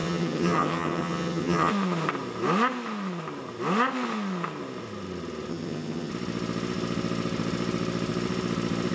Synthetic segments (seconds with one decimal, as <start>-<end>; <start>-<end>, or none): 0.0-1.7; 5.5-6.1